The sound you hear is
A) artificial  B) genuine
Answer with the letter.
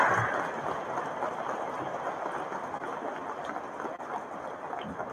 B